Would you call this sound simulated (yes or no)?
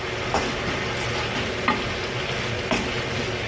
no